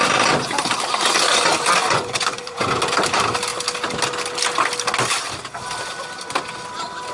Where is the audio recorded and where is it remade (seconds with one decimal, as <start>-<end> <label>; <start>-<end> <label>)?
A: 0.0-1.8 recorded; 1.8-2.8 remade; 2.8-7.1 recorded